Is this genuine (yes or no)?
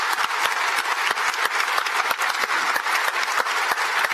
no